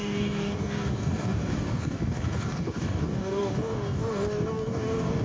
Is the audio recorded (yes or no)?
no